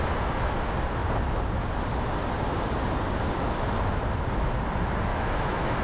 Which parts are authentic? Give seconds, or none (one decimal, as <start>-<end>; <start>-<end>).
0.0-5.1